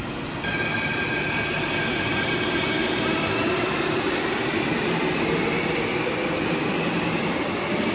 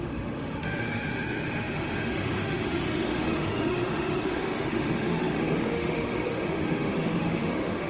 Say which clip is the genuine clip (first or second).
first